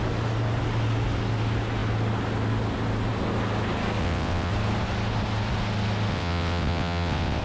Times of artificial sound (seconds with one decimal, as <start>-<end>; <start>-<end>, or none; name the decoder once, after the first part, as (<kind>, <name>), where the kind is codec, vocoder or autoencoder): 4.0-4.5 (vocoder, WaveNeXt); 6.1-7.4